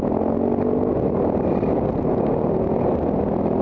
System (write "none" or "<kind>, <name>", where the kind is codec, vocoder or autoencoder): none